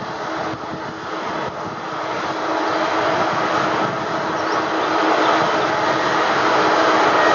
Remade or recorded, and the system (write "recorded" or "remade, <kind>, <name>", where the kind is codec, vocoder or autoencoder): recorded